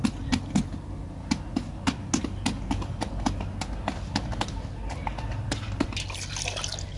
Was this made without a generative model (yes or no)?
yes